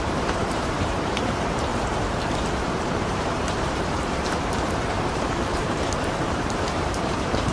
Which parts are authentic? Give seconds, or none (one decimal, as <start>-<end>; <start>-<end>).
1.7-2.9